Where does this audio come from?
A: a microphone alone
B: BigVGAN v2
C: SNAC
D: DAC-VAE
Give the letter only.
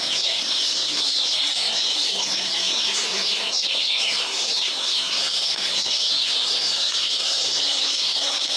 C